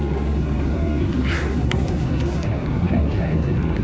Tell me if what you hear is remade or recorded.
remade